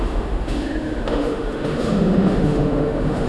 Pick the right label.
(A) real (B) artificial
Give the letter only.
B